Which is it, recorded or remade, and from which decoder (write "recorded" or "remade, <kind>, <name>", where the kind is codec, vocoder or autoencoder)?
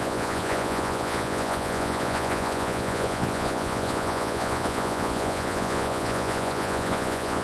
remade, vocoder, Vocos